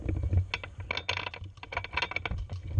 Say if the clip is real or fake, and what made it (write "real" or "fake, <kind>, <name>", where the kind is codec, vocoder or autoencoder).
real